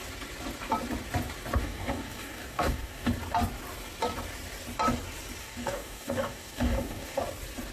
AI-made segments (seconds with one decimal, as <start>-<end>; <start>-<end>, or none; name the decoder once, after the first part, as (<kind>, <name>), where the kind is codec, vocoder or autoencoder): 1.6-3.1 (codec, DAC); 5.4-7.2

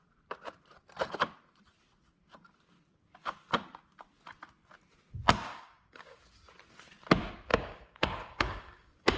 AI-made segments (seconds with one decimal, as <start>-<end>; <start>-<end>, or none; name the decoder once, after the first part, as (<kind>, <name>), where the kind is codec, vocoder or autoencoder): 5.5-6.2 (codec, DAC); 7.5-9.2

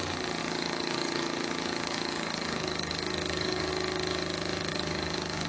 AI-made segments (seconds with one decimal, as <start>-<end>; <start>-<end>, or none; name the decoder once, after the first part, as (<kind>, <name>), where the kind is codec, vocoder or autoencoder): 0.4-3.7 (codec, DAC); 4.7-5.5

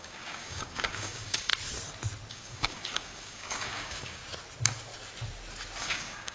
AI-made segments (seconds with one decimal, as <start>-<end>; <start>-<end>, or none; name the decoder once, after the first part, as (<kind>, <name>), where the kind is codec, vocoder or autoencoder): 0.0-1.5 (codec, DAC); 2.3-4.2; 5.8-6.3

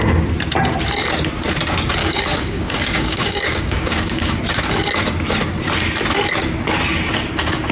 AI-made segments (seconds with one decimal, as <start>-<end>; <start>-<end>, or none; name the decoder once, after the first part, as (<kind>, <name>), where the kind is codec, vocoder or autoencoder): 2.0-4.4 (codec, DAC)

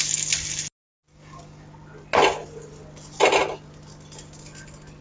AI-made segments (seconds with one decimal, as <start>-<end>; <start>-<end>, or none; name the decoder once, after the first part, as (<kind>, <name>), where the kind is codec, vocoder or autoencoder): none

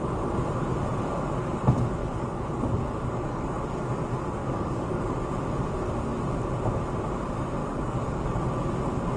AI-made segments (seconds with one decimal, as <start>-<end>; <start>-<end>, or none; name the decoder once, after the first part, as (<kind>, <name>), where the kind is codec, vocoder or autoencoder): 2.0-4.0 (codec, DAC); 4.4-5.0; 7.6-8.4

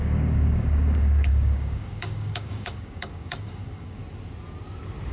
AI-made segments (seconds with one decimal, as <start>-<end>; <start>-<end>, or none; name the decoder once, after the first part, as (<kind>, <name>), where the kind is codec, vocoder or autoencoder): 0.0-4.0 (codec, DAC)